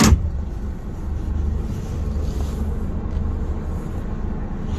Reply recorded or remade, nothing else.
recorded